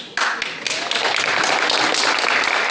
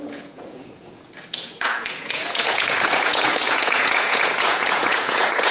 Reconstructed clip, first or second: second